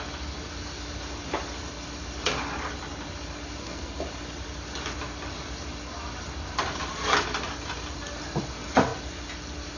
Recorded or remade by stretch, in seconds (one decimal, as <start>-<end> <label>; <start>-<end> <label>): 0.0-3.6 recorded; 3.6-4.1 remade; 4.1-9.8 recorded